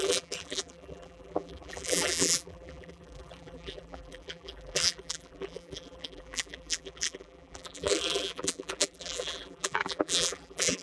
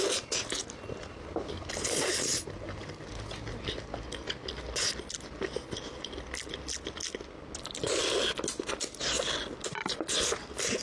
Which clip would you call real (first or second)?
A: second